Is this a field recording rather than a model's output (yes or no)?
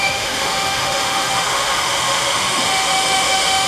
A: no